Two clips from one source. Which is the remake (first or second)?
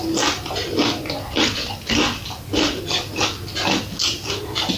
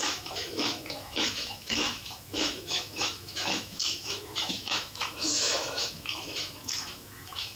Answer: second